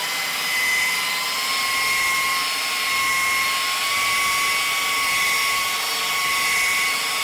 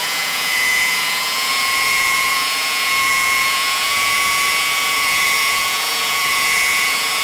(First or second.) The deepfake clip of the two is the second